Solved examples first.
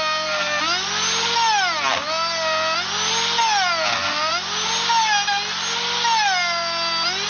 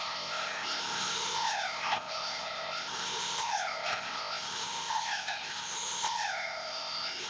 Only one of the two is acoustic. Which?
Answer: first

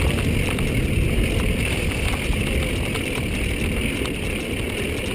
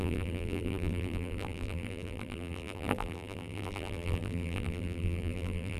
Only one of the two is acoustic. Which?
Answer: first